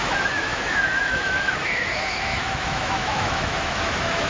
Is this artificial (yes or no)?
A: yes